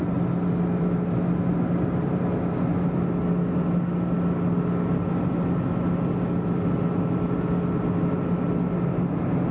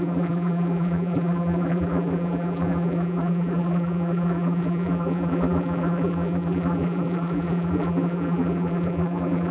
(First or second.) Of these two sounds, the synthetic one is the second